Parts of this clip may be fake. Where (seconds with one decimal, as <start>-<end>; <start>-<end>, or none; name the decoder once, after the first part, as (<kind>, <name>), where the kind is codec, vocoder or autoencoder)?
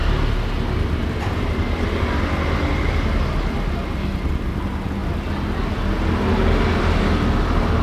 none